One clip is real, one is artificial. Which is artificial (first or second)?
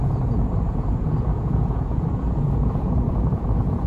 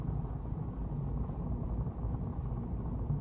first